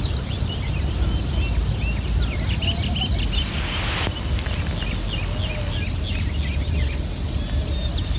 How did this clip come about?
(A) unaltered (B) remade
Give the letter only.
A